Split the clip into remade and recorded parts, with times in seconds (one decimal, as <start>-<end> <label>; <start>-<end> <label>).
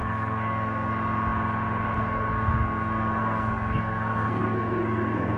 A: 0.0-0.9 remade; 0.9-2.0 recorded; 2.0-5.4 remade